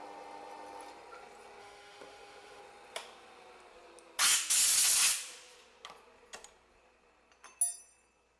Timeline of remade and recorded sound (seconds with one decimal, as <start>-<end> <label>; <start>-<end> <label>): 0.0-1.6 recorded; 1.6-2.6 remade; 2.6-8.4 recorded